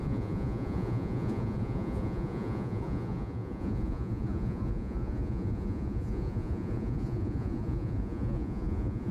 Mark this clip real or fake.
fake